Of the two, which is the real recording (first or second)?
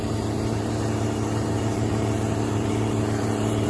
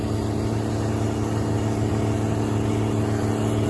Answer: second